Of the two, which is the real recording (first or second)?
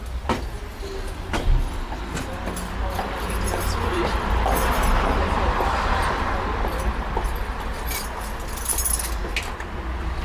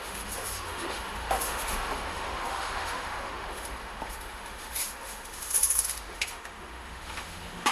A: first